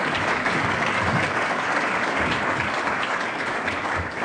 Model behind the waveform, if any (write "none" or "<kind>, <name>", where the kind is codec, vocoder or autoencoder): codec, DAC